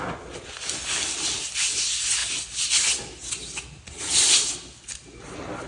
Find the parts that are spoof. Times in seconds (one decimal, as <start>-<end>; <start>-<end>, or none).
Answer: none